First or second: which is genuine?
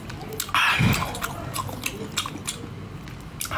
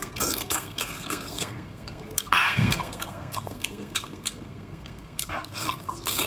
first